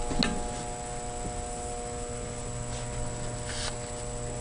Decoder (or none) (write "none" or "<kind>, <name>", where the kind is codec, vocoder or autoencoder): none